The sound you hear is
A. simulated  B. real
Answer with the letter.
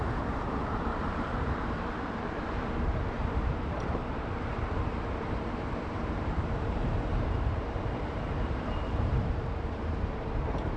A